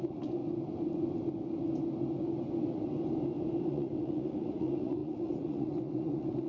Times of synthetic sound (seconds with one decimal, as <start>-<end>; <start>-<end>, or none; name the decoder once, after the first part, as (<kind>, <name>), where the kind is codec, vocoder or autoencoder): 0.0-0.4 (vocoder, Vocos); 3.7-6.5